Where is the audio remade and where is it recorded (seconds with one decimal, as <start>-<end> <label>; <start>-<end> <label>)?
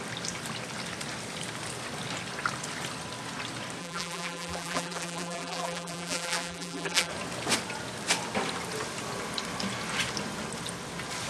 0.0-3.8 recorded; 3.8-7.1 remade; 7.1-11.3 recorded